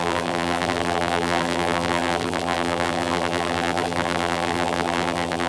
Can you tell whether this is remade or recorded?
remade